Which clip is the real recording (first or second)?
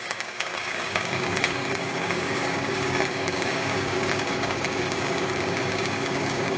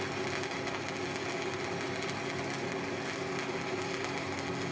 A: second